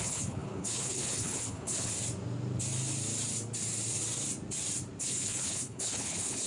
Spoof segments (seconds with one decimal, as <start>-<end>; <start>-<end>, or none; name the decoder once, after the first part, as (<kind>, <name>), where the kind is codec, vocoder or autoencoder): 0.0-1.9 (codec, HILCodec); 5.0-6.5